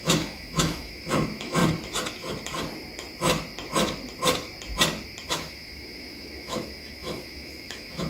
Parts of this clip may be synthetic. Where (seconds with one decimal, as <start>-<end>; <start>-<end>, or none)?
0.0-1.6; 5.3-8.1